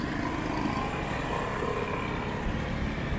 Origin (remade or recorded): recorded